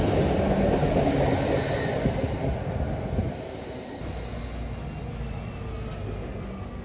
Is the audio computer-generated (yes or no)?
no